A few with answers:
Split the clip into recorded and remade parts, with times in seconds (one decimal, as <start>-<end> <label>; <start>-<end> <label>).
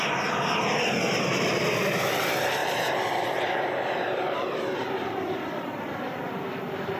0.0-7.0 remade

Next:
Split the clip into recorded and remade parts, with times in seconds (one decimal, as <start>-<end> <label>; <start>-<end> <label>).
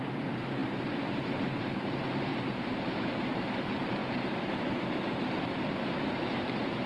0.0-6.9 remade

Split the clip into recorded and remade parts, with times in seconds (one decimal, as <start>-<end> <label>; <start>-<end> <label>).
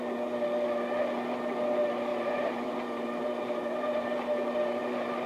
0.0-2.1 recorded; 2.1-5.3 remade